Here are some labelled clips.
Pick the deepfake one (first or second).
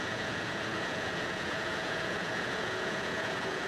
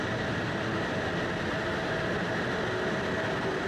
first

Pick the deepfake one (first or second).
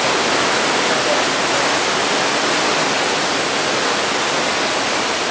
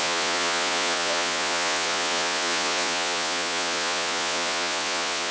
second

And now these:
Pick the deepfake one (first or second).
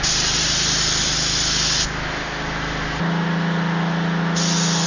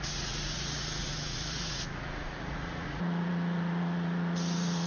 second